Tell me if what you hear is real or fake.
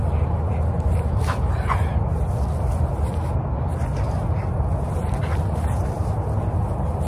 real